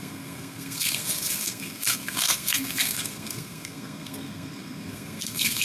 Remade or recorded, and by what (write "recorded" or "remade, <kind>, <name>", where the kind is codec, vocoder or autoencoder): remade, codec, SNAC